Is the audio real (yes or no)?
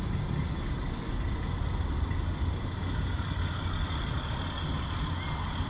yes